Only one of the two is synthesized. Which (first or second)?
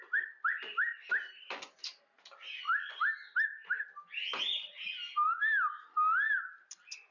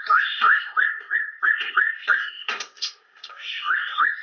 second